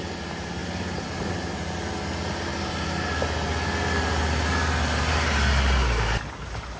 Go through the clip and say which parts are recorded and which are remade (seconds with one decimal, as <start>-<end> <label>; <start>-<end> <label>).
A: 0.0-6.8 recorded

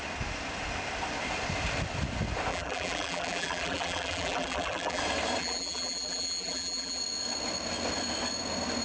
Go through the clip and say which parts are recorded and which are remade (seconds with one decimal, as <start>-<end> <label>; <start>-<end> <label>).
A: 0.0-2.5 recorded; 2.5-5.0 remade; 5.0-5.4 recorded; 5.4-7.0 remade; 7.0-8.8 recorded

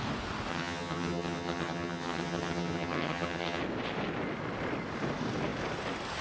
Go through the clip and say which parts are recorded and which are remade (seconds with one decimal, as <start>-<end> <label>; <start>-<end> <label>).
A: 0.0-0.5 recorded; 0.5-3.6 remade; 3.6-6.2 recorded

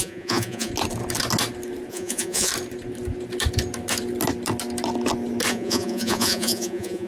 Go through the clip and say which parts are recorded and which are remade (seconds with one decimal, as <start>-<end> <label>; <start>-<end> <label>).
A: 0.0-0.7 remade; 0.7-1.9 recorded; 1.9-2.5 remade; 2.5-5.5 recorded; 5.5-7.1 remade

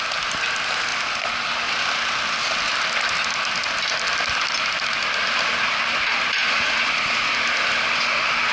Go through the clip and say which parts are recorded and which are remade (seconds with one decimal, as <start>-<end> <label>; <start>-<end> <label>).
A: 0.0-6.4 recorded; 6.4-7.1 remade; 7.1-8.5 recorded